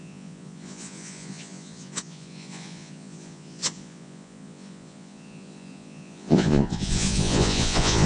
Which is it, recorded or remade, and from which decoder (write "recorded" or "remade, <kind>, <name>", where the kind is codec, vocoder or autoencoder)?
remade, vocoder, Vocos